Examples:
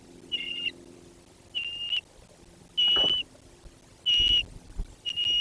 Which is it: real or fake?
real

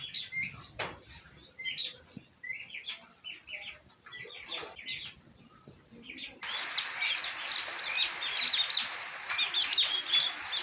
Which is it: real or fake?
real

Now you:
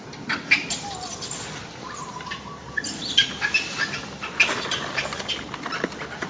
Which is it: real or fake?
real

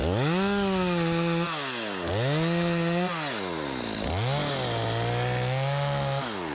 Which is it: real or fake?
real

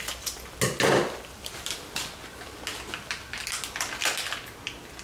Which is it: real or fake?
real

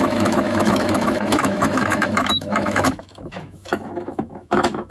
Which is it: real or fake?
fake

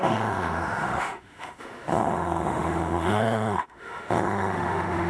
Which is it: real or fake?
fake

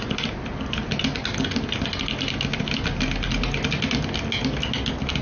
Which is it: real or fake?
real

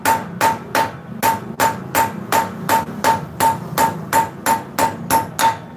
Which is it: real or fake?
real